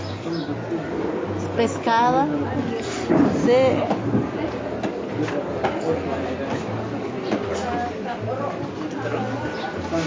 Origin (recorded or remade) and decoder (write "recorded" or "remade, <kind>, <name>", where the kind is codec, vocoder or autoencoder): recorded